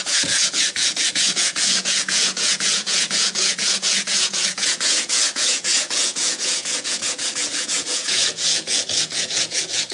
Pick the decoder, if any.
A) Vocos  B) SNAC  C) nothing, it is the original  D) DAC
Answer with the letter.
A